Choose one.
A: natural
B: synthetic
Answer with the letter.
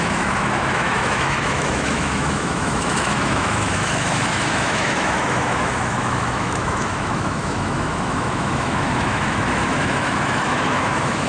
B